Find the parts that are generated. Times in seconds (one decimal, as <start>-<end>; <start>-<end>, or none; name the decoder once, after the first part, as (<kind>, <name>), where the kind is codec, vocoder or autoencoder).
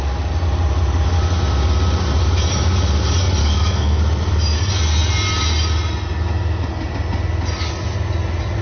3.4-4.0 (codec, SNAC)